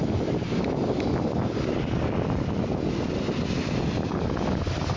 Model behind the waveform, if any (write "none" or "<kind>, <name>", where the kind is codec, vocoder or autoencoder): none